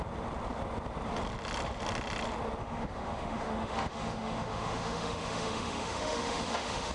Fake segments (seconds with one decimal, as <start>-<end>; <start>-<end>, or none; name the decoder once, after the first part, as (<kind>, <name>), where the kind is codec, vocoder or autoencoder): 2.6-6.9 (autoencoder, DAC-VAE)